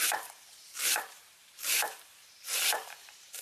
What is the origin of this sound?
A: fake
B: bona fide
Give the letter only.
A